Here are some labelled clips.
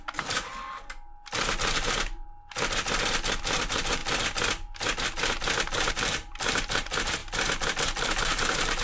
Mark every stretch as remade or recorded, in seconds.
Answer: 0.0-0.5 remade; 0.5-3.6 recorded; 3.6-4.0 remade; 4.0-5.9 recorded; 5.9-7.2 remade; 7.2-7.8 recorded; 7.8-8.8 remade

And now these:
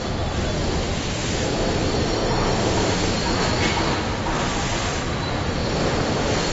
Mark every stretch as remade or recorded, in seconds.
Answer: 0.0-0.6 remade; 0.6-1.2 recorded; 1.2-2.2 remade; 2.2-4.4 recorded; 4.4-6.5 remade

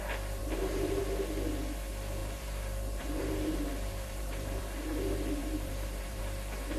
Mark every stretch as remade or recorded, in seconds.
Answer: 0.0-0.4 recorded; 0.4-1.0 remade; 1.0-2.2 recorded; 2.2-4.6 remade; 4.6-5.4 recorded; 5.4-6.2 remade; 6.2-6.8 recorded